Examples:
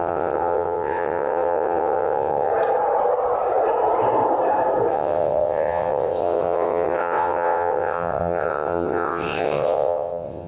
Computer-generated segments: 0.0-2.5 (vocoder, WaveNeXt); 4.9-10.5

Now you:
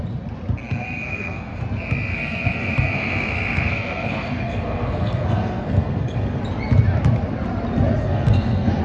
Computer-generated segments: 0.6-1.6 (codec, SNAC); 2.1-6.4; 8.0-8.8